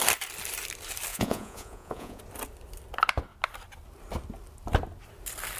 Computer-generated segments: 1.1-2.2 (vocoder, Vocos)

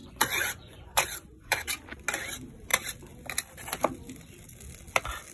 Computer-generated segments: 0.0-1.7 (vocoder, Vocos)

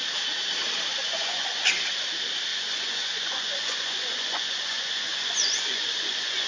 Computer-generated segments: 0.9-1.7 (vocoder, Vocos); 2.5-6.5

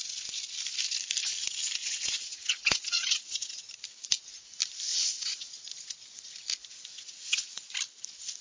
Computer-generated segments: 1.8-3.6 (vocoder, WaveNeXt); 4.9-5.5; 6.9-7.5